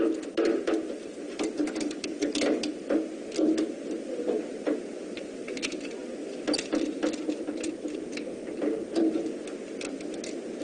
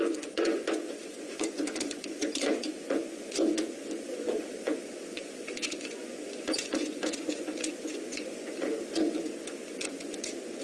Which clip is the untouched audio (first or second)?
first